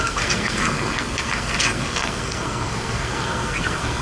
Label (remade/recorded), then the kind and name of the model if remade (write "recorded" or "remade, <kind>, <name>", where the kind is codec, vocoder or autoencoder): remade, codec, SNAC